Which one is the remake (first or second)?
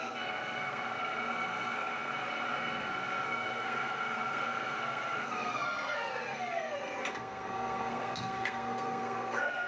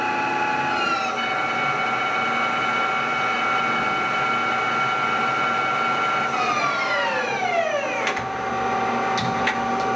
first